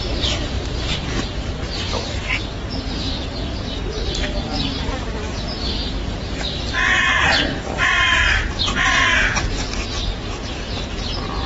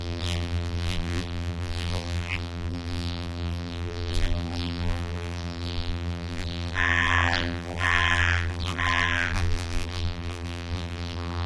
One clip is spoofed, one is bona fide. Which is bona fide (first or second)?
first